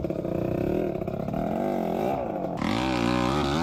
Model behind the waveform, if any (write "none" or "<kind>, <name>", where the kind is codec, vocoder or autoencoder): none